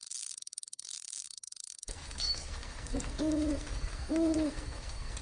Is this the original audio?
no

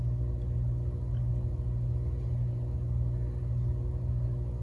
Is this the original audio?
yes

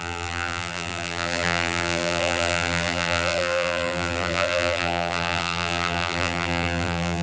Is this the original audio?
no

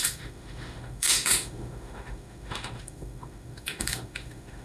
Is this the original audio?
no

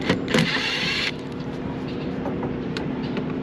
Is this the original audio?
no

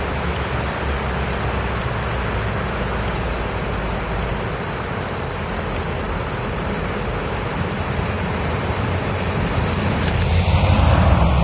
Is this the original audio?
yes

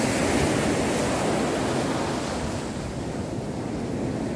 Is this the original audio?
yes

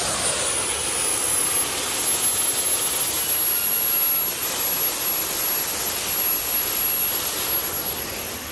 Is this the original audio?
yes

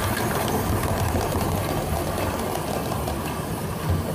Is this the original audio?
yes